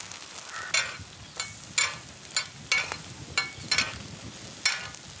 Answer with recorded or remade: recorded